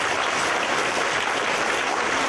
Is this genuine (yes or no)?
yes